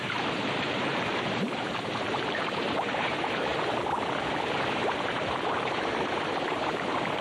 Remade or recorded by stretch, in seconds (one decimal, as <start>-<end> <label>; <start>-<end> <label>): 0.0-3.5 remade; 3.5-4.9 recorded; 4.9-7.2 remade